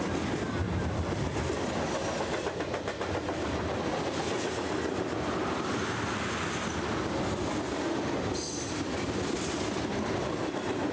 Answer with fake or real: real